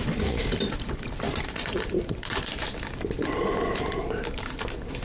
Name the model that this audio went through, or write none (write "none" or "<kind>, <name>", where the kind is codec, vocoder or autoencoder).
vocoder, BigVGAN v2